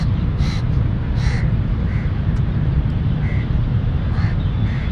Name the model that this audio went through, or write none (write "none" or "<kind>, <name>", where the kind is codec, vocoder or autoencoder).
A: vocoder, BigVGAN v2